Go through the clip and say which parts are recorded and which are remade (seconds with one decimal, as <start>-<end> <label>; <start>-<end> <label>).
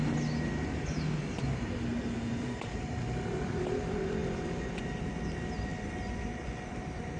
0.0-1.9 recorded; 1.9-3.0 remade; 3.0-7.2 recorded